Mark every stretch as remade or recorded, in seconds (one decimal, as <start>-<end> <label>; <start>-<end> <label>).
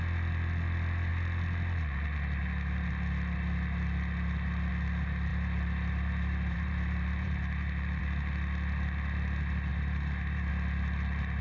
0.0-5.3 recorded; 5.3-8.0 remade; 8.0-9.7 recorded; 9.7-10.5 remade; 10.5-11.4 recorded